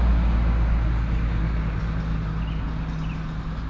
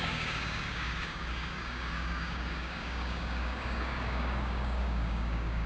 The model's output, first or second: second